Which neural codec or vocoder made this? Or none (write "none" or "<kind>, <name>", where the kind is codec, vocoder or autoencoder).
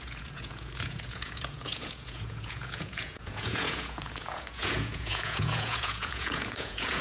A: vocoder, Vocos